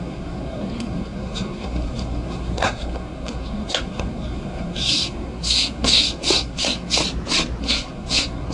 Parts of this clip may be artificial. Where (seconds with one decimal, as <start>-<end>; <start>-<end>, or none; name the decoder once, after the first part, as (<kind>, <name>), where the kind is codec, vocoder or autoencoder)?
0.0-7.0 (codec, SNAC); 7.6-8.5